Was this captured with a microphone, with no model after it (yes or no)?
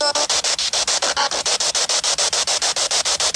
no